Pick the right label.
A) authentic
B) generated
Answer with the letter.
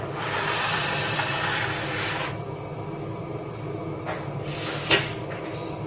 A